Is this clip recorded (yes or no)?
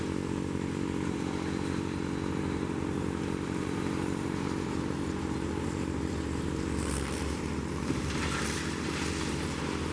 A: no